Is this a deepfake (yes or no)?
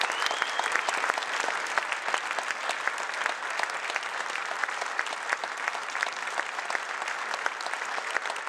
no